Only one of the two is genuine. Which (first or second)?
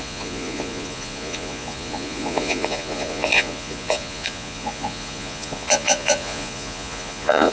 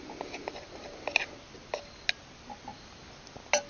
second